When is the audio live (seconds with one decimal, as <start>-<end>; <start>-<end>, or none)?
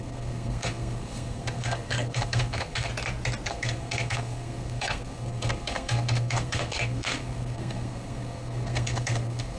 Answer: 2.9-3.5